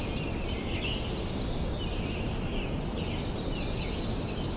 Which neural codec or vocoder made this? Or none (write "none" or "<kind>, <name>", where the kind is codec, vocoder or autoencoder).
none